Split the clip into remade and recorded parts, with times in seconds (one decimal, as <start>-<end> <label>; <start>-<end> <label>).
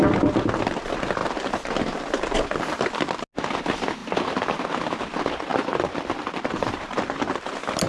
0.0-4.0 recorded; 4.0-4.6 remade; 4.6-5.5 recorded; 5.5-7.2 remade; 7.2-7.9 recorded